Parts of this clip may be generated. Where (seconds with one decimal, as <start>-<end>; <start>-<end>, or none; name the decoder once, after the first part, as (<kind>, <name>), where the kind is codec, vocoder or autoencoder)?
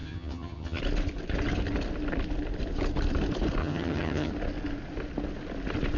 0.0-0.8 (vocoder, HiFi-GAN); 3.6-4.3